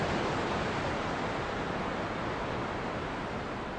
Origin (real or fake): real